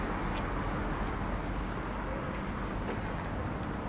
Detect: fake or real real